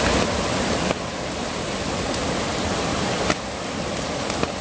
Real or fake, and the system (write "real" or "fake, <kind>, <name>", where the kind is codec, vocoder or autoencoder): real